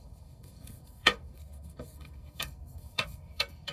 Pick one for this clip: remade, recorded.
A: remade